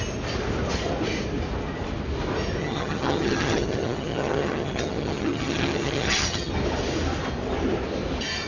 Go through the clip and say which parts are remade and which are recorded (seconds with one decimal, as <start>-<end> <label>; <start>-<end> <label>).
0.0-2.6 recorded; 2.6-6.5 remade; 6.5-8.5 recorded